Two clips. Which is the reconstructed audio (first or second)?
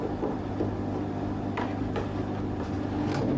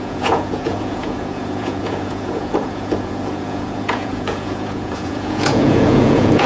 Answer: second